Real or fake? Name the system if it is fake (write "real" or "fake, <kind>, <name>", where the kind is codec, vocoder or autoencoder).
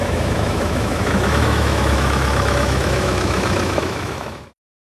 fake, autoencoder, DAC-VAE